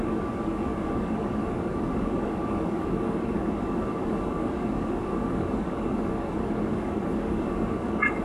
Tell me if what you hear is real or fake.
fake